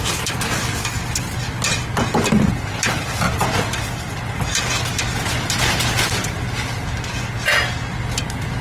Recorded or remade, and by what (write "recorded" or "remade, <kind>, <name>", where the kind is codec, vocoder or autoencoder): recorded